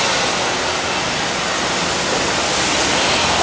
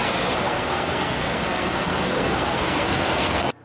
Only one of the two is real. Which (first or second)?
first